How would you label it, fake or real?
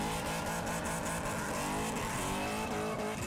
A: real